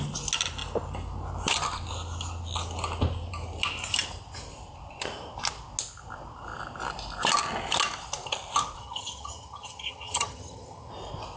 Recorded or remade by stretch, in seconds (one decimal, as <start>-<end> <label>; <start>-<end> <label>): 0.0-8.8 recorded; 8.8-10.9 remade; 10.9-11.4 recorded